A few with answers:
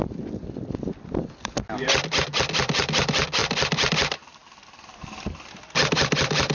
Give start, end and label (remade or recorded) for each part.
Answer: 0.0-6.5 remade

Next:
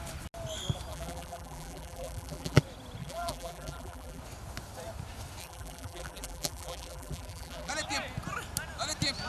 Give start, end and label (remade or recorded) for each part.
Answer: 0.0-0.9 recorded; 0.9-2.6 remade; 2.6-3.0 recorded; 3.0-4.2 remade; 4.2-5.4 recorded; 5.4-7.7 remade; 7.7-9.3 recorded

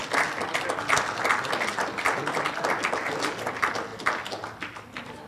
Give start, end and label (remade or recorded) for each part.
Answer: 0.0-5.3 recorded

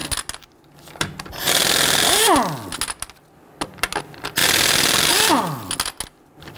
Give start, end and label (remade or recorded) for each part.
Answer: 0.0-6.6 recorded

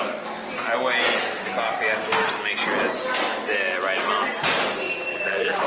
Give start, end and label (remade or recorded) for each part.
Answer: 0.0-5.1 recorded; 5.1-5.7 remade